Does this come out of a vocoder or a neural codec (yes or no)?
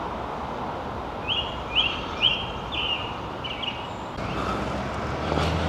no